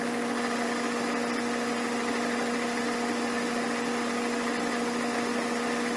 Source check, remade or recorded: recorded